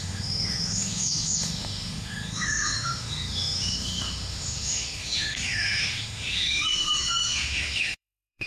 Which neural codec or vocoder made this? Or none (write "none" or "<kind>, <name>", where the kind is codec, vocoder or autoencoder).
autoencoder, DAC-VAE